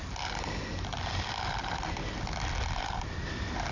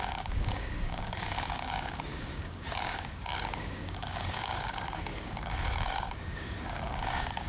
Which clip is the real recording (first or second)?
first